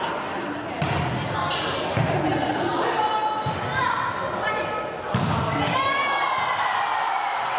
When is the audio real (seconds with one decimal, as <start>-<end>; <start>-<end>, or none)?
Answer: 0.0-7.6